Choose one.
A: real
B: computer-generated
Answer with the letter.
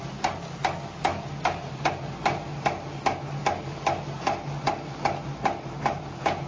A